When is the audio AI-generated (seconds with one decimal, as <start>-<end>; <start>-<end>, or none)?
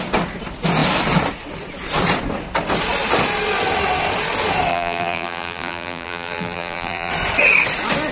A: 4.7-7.1